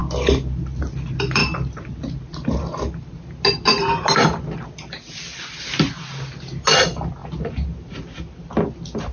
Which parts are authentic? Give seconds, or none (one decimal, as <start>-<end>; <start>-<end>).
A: 0.0-9.1